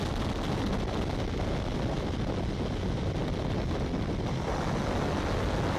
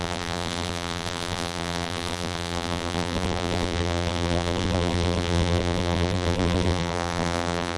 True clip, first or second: first